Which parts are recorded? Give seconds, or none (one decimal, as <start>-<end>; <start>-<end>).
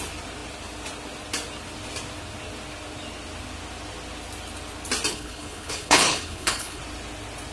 0.0-5.1; 6.8-7.5